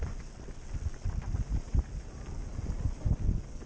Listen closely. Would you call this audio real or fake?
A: real